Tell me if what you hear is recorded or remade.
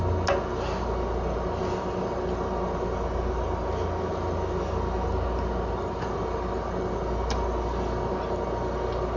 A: recorded